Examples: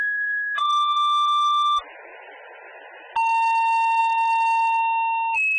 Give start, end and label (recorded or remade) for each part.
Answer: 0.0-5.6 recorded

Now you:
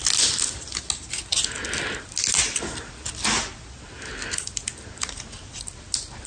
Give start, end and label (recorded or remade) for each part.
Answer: 0.0-6.3 recorded

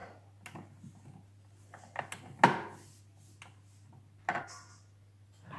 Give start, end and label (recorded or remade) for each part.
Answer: 0.0-5.6 recorded